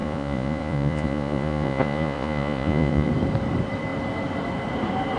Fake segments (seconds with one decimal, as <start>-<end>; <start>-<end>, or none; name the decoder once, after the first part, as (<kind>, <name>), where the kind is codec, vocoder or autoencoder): 0.0-3.1 (vocoder, Vocos)